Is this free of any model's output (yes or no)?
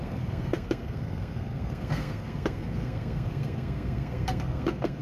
no